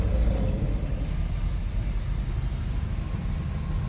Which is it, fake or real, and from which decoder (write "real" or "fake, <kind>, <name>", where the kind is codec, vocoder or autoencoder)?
real